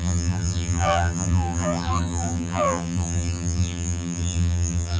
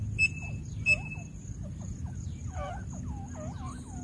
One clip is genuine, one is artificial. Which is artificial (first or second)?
first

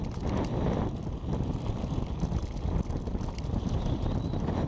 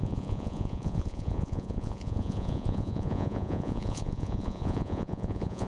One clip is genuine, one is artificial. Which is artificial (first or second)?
second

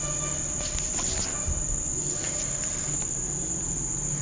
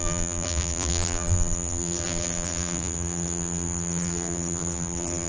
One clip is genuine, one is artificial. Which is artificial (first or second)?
second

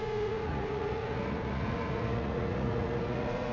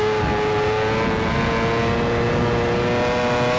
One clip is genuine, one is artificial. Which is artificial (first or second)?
first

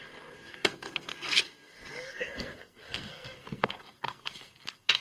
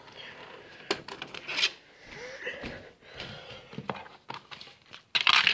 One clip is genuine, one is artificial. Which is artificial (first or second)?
first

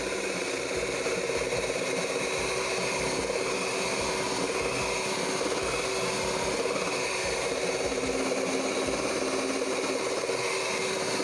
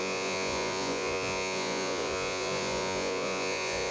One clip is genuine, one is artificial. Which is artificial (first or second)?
second